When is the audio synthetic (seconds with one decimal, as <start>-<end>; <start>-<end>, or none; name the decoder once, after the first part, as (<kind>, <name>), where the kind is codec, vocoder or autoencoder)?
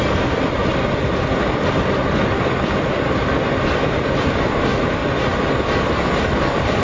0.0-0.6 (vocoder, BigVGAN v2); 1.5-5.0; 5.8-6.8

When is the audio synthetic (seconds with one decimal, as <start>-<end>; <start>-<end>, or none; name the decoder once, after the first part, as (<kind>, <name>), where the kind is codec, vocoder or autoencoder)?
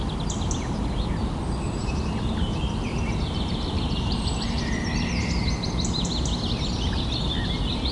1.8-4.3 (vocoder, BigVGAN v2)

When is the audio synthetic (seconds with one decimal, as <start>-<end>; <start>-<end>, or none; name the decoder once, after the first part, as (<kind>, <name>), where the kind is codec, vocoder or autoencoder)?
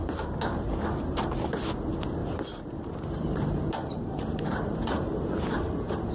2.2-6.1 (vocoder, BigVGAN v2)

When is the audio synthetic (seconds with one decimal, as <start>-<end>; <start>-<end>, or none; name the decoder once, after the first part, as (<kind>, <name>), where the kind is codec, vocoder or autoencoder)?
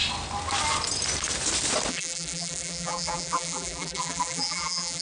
1.9-5.0 (vocoder, BigVGAN v2)